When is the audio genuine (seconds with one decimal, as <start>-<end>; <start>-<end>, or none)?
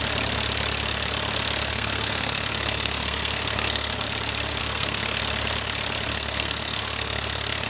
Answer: 0.0-1.7; 3.9-4.6; 5.2-6.1